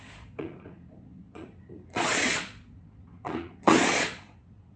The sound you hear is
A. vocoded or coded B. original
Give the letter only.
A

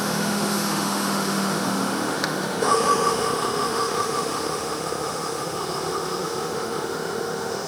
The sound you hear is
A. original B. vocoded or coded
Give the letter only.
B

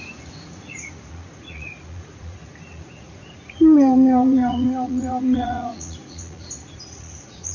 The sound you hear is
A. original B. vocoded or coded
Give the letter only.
B